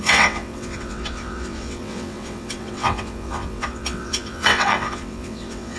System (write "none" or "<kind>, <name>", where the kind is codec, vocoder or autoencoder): vocoder, WaveNeXt